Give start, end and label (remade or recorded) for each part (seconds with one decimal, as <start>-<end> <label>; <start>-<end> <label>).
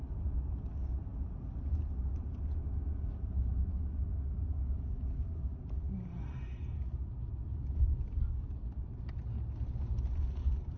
0.0-10.8 recorded